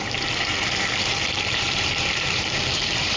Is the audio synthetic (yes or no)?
yes